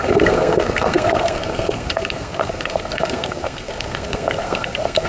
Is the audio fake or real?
fake